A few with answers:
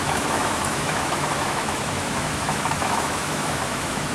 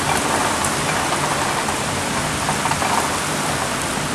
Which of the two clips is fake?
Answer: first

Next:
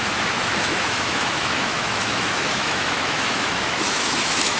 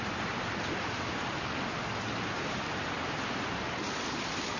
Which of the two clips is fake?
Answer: first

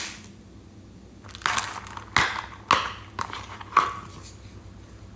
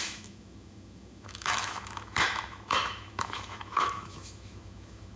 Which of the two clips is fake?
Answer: second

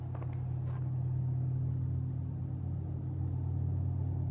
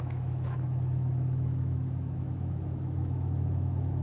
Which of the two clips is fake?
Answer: second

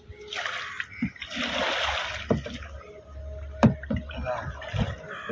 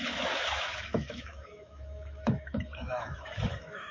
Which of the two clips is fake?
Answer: second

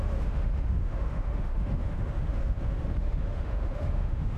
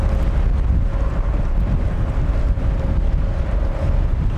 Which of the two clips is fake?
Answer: first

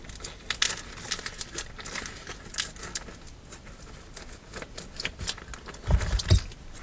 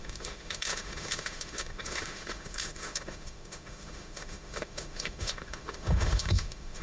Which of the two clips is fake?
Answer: second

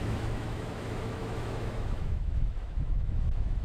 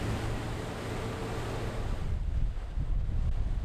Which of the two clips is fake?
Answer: first